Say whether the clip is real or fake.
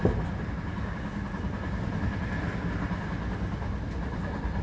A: real